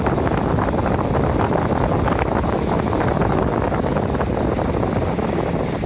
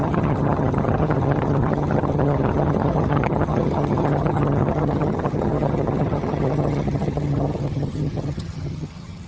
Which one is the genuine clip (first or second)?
first